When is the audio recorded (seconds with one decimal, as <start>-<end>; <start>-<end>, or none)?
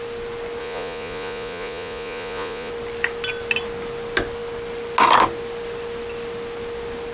0.0-0.6; 2.7-7.1